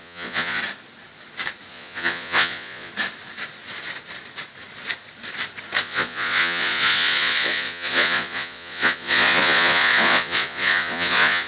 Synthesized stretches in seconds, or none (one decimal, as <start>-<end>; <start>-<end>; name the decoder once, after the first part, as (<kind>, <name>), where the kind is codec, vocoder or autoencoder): 0.0-0.6 (vocoder, Vocos); 1.7-2.9; 5.8-11.5